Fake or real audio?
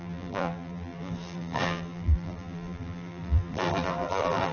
fake